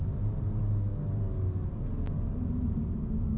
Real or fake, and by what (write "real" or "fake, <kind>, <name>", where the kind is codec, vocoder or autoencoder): real